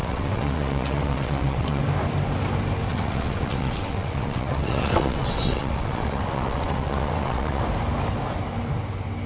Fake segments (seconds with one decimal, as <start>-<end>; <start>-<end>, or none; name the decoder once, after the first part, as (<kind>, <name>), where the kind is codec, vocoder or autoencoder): 0.0-1.8 (vocoder, WaveNeXt); 2.9-7.6